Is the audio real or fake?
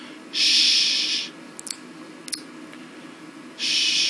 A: real